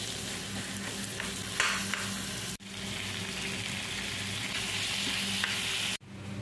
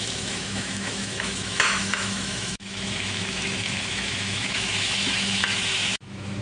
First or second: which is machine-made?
second